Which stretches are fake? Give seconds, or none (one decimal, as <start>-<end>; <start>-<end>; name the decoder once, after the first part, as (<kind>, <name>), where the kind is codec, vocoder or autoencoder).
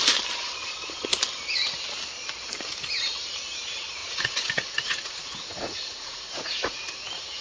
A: 4.0-6.9 (vocoder, Vocos)